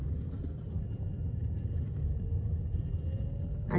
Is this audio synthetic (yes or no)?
no